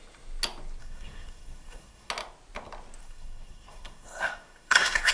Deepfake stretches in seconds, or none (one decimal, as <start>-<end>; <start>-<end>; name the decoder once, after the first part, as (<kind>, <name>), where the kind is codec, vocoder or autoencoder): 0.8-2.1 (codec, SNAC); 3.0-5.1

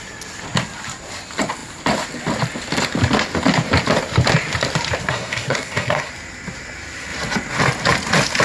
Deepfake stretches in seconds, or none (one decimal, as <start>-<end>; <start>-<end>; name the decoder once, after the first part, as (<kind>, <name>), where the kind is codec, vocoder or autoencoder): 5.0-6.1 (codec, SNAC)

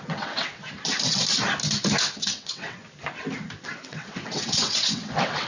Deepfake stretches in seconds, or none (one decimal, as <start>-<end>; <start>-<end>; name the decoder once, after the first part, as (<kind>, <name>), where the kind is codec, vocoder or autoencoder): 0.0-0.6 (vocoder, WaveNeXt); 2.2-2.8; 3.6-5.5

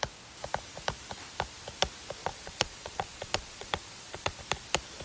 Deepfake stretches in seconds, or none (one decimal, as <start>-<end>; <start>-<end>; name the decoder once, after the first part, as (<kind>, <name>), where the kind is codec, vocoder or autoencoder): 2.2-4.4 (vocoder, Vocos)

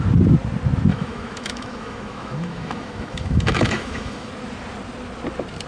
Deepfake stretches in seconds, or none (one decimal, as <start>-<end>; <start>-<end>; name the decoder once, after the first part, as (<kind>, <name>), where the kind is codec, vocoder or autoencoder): 0.9-4.3 (autoencoder, DAC-VAE)

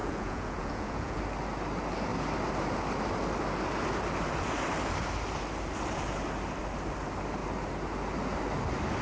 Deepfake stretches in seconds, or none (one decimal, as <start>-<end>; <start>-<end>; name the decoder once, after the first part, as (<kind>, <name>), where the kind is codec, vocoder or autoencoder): 0.0-1.2 (vocoder, Vocos)